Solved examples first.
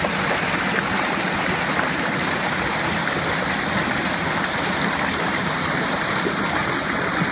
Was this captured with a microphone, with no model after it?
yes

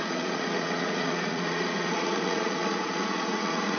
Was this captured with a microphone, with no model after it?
no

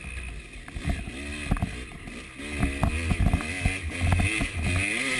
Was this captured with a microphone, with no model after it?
yes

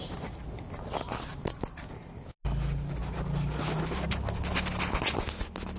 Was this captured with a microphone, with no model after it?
yes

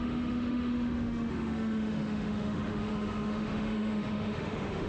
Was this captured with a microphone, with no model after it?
no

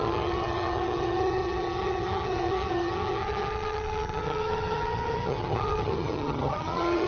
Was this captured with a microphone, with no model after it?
no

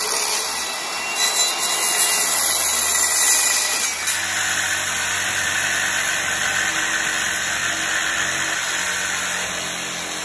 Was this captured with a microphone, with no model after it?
yes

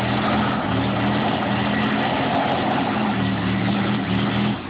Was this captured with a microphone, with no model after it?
yes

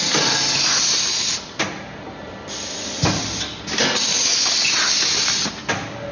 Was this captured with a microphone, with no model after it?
yes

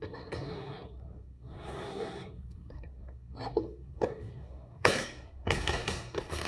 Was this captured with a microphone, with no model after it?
no